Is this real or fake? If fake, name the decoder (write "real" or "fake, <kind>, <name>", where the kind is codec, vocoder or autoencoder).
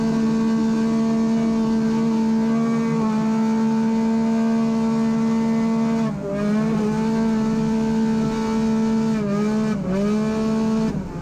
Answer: real